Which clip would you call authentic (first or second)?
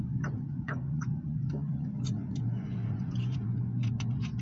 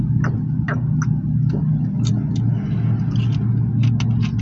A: second